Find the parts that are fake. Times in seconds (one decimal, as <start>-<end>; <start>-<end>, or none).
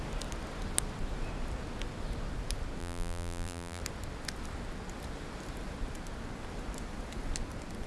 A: 2.8-3.8